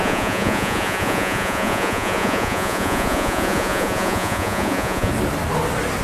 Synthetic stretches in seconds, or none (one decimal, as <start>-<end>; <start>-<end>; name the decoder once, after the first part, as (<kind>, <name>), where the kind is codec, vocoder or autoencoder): 0.0-5.1 (vocoder, Vocos)